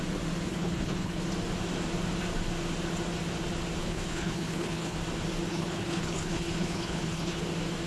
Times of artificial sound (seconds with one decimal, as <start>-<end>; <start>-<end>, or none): 0.5-1.2; 3.8-5.0; 5.5-7.4